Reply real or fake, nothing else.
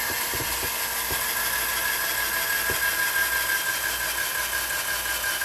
real